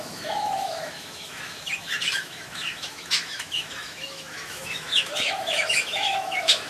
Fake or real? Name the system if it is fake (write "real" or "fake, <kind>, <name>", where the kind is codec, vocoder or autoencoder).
fake, autoencoder, DAC-VAE